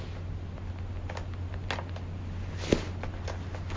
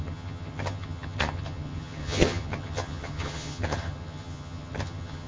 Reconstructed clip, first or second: second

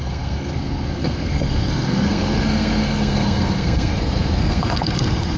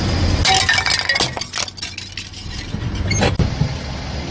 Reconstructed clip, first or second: first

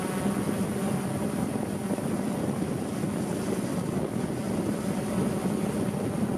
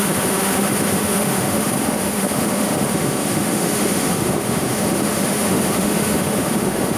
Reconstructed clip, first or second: second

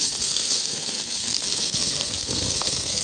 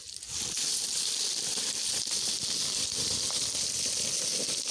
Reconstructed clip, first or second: first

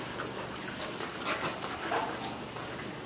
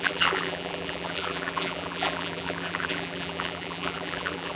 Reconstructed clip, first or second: second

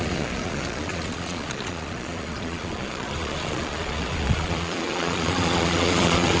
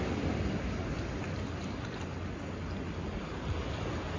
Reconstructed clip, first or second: first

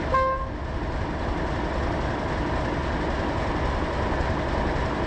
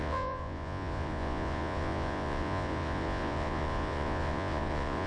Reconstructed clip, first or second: second